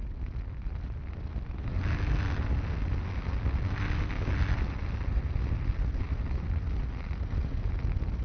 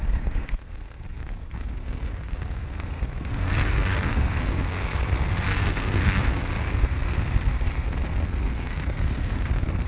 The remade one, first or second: second